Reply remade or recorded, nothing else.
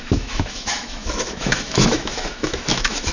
remade